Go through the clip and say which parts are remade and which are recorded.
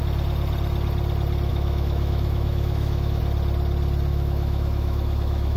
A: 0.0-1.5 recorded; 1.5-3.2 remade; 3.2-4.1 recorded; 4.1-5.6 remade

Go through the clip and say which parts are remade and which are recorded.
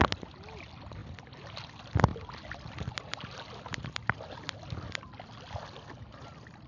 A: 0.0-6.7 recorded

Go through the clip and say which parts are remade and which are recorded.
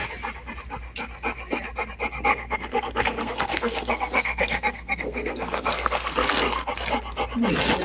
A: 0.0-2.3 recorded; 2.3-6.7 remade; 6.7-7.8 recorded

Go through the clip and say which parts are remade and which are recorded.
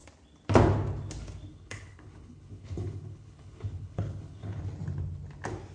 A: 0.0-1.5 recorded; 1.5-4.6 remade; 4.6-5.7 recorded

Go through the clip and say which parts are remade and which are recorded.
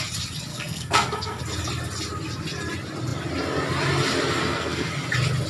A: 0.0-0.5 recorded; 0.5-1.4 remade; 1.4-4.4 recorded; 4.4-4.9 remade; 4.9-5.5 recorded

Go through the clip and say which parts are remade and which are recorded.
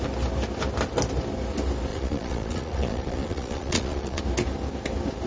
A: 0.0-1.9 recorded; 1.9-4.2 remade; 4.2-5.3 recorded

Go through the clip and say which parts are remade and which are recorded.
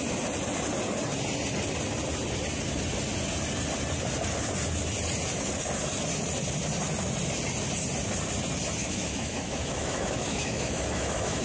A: 0.0-8.8 recorded; 8.8-11.4 remade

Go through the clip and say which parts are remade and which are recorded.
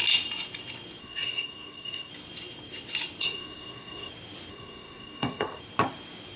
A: 0.0-1.0 recorded; 1.0-2.1 remade; 2.1-3.2 recorded; 3.2-4.1 remade; 4.1-4.5 recorded; 4.5-5.6 remade; 5.6-6.4 recorded